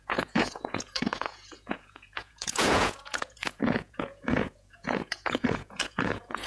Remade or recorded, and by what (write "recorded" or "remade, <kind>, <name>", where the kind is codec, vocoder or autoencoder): remade, vocoder, Vocos